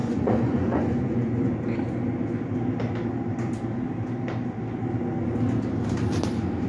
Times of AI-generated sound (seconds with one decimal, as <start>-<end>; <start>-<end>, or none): 0.0-1.5